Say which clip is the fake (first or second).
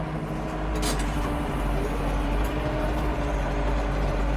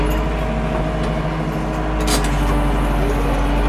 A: first